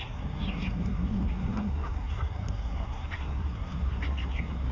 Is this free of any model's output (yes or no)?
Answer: no